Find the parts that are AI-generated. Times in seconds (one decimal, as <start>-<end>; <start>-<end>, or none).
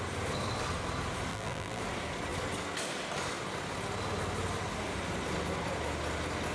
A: 1.3-1.8